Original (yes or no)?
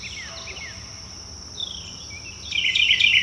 yes